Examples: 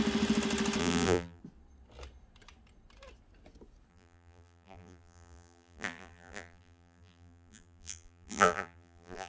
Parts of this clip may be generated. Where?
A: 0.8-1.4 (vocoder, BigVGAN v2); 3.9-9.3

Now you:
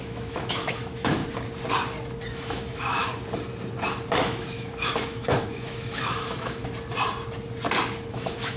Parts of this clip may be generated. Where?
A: 0.0-1.2 (autoencoder, DAC-VAE); 2.3-3.1; 4.2-6.6; 8.1-8.6

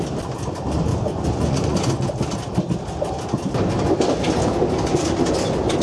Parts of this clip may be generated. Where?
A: 0.9-2.1 (vocoder, Vocos)

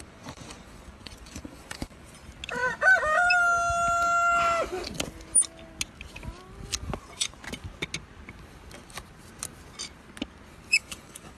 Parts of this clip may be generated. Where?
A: 0.0-2.2 (vocoder, Vocos); 7.0-7.4; 10.7-11.4